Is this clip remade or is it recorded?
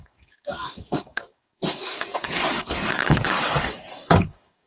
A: remade